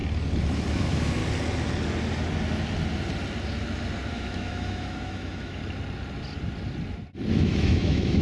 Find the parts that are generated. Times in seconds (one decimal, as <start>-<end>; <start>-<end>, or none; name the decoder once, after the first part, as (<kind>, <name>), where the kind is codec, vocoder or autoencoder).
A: 0.7-1.2 (autoencoder, DAC-VAE); 4.1-5.6; 7.3-8.2

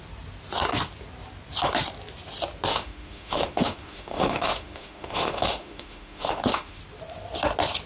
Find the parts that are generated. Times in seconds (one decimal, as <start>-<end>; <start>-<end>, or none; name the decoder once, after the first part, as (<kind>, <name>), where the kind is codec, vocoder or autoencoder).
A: 2.7-6.8 (autoencoder, DAC-VAE)